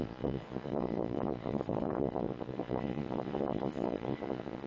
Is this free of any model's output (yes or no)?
no